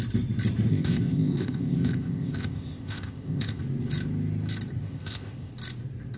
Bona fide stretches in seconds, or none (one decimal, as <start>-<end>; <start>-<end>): 0.0-0.7; 3.6-4.8; 5.5-6.2